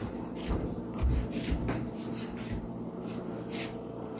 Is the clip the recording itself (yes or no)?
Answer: no